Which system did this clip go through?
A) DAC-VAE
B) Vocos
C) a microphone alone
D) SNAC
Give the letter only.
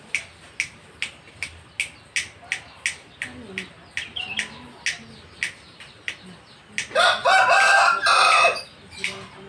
C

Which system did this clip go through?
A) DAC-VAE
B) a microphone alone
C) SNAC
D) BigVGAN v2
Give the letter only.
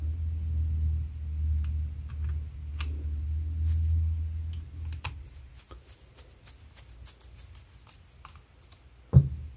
B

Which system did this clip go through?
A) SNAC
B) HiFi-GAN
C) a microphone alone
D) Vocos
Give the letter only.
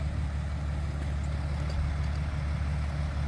C